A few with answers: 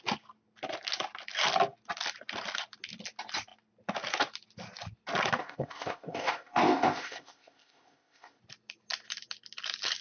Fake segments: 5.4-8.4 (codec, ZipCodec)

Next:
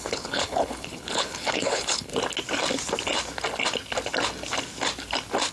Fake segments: 0.0-2.1 (codec, HILCodec)